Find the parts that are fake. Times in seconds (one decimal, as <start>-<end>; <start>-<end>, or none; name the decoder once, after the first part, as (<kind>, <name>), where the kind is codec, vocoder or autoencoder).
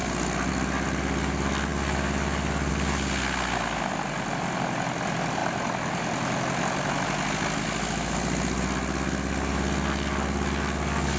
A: none